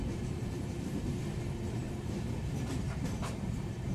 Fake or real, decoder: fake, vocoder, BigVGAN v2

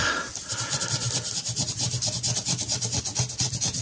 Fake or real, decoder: real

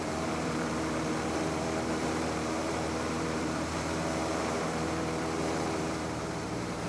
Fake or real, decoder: fake, vocoder, BigVGAN v2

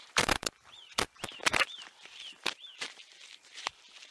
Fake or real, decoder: fake, vocoder, BigVGAN v2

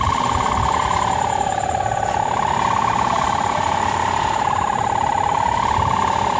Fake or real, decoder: fake, vocoder, BigVGAN v2